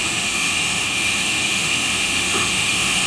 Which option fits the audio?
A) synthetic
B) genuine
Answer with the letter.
A